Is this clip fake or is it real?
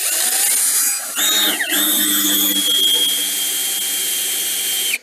real